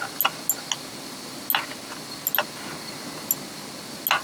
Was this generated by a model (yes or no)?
no